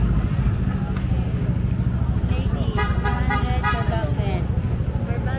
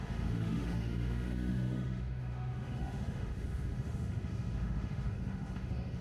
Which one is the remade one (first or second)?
second